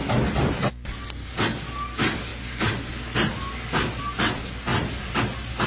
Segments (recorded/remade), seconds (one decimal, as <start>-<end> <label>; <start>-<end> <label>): 0.0-4.7 recorded; 4.7-5.2 remade; 5.2-5.7 recorded